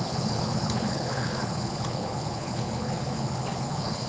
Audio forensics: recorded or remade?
remade